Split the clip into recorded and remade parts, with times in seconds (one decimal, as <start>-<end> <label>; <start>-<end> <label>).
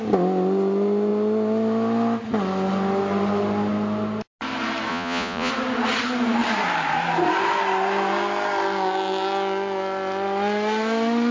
0.0-4.9 recorded; 4.9-5.5 remade; 5.5-11.3 recorded